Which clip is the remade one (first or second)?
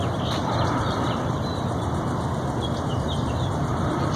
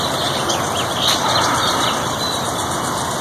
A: first